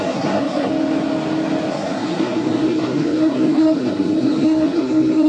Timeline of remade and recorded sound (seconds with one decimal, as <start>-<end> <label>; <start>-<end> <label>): 0.0-0.7 remade; 0.7-1.7 recorded; 1.7-5.3 remade